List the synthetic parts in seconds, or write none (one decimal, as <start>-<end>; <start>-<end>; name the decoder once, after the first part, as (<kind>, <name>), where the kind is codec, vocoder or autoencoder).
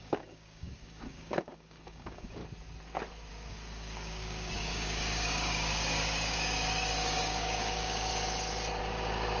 0.0-2.4 (codec, DAC); 3.3-8.1; 8.8-9.4